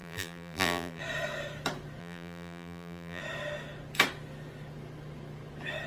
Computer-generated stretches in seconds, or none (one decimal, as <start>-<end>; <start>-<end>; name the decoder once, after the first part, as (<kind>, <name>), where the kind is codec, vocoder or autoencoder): 0.0-1.0 (vocoder, BigVGAN v2); 2.0-3.2